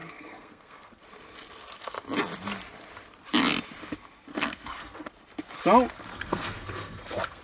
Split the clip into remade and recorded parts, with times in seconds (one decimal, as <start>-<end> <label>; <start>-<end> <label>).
0.0-1.0 remade; 1.0-4.3 recorded; 4.3-5.1 remade; 5.1-6.1 recorded; 6.1-7.4 remade